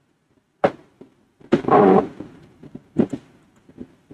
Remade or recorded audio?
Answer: remade